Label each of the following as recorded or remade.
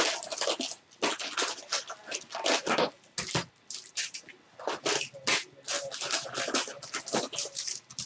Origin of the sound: recorded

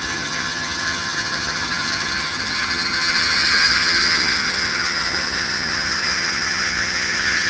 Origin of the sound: remade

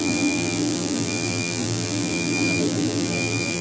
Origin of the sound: remade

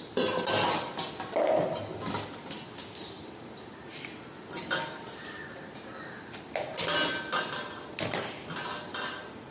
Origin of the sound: recorded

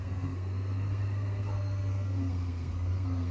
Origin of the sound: remade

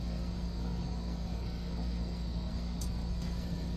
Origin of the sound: remade